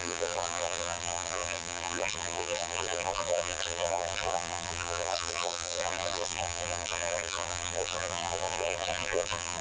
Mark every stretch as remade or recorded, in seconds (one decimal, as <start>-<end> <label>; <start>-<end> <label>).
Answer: 0.0-9.6 remade